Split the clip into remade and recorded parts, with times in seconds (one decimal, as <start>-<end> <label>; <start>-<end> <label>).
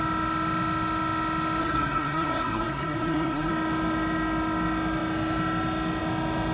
0.0-1.6 recorded; 1.6-3.5 remade; 3.5-6.5 recorded